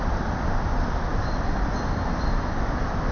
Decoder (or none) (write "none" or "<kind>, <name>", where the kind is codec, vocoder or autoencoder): none